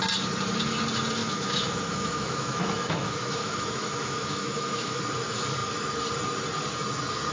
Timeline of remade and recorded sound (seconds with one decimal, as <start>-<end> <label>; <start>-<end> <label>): 0.0-1.2 recorded; 1.2-5.0 remade; 5.0-7.3 recorded